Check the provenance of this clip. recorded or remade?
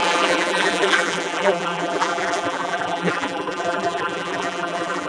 remade